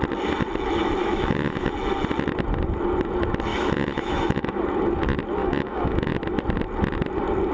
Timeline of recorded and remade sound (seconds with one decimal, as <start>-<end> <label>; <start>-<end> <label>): 0.0-1.0 recorded; 1.0-1.7 remade; 1.7-3.5 recorded; 3.5-4.6 remade; 4.6-5.4 recorded; 5.4-6.1 remade; 6.1-7.5 recorded